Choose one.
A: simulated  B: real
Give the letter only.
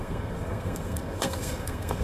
A